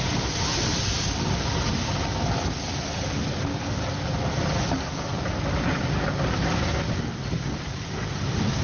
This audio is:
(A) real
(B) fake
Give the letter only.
A